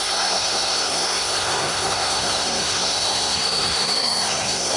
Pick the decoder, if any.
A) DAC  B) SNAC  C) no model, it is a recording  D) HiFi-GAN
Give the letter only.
B